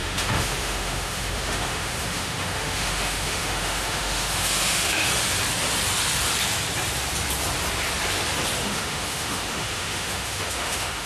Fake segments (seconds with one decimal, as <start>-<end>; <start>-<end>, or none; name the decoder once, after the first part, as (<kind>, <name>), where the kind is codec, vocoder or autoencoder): 0.0-5.1 (autoencoder, DAC-VAE); 8.6-11.1